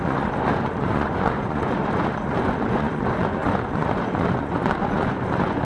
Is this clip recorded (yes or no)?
no